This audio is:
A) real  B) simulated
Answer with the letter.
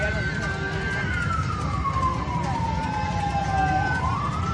A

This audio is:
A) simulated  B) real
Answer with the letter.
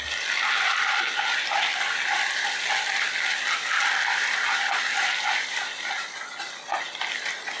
A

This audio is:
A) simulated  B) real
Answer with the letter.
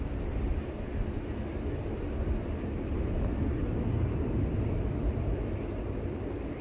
B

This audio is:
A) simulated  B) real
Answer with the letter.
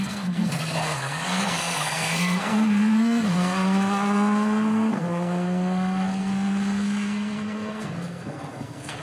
A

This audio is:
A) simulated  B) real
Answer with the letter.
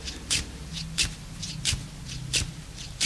B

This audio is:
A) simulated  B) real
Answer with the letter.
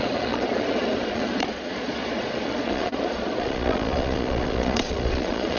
A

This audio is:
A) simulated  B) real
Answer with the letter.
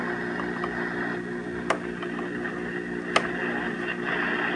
B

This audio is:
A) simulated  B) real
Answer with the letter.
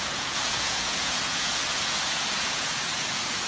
A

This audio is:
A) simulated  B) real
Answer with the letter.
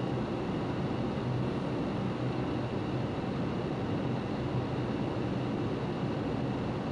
B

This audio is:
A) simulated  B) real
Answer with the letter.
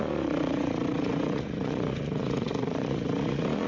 A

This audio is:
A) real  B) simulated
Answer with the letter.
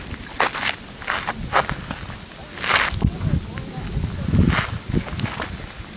A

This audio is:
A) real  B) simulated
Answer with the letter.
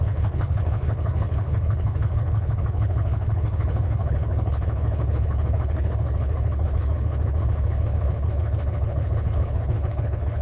B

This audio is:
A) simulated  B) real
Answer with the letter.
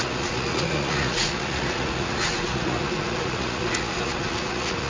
A